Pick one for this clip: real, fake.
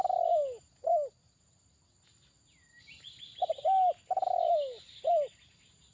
real